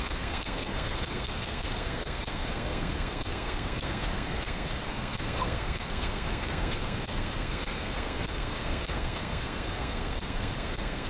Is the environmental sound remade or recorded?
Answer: remade